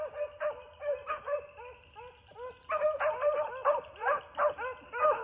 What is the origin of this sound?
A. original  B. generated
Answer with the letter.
A